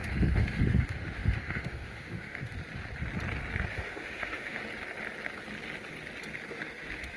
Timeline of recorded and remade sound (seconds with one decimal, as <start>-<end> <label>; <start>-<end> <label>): 0.0-2.5 remade; 2.5-3.7 recorded; 3.7-4.6 remade; 4.6-7.2 recorded